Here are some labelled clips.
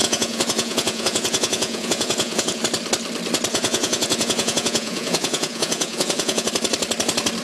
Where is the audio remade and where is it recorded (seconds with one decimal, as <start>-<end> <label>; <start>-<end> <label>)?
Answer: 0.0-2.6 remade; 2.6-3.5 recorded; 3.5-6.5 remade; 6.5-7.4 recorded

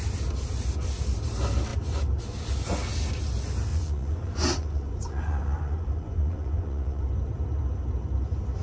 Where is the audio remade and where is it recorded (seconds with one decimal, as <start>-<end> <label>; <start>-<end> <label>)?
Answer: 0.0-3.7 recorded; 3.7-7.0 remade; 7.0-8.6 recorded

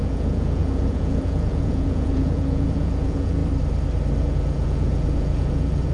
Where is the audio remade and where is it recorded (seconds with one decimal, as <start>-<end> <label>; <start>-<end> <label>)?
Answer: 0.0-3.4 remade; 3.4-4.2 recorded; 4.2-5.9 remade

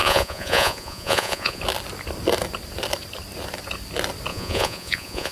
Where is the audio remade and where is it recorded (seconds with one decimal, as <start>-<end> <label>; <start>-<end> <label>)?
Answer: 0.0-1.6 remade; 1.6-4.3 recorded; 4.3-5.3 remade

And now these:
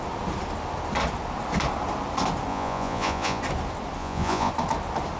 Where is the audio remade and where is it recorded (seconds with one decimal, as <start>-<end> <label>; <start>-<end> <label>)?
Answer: 0.0-2.5 recorded; 2.5-3.4 remade; 3.4-4.0 recorded; 4.0-4.5 remade; 4.5-5.2 recorded